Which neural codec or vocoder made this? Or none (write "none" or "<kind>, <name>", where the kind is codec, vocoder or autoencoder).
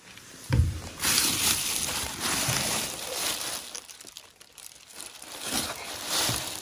vocoder, BigVGAN v2